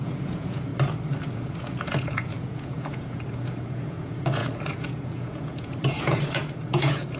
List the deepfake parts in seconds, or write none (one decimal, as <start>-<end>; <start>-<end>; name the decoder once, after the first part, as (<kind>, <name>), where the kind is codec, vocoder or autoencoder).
0.0-0.7 (vocoder, Vocos); 1.2-7.2